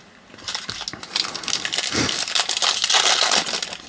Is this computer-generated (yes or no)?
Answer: no